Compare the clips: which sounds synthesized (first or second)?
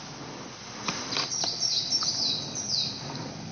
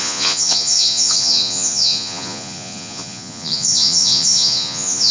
second